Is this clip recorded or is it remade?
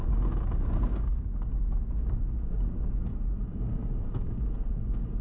remade